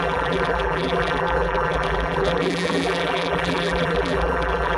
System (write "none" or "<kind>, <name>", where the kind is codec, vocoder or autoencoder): vocoder, BigVGAN v2